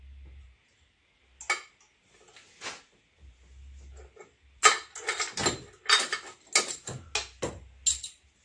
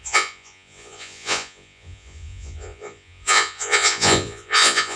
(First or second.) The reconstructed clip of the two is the second